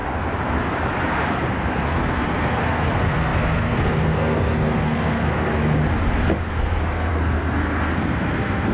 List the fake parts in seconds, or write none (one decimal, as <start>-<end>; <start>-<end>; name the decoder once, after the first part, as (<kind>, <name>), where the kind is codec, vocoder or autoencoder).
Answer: 1.7-5.5 (codec, SNAC); 6.5-8.7